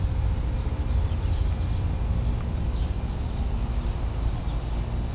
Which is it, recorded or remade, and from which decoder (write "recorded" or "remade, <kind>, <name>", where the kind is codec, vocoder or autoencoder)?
recorded